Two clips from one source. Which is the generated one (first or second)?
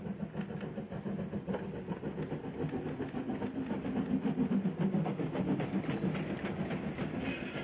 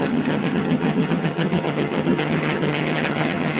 second